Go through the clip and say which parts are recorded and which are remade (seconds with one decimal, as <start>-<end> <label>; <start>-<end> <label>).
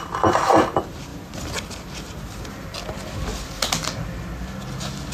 0.0-5.1 recorded